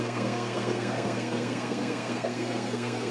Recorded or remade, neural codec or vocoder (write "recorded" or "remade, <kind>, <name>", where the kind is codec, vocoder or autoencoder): remade, codec, SNAC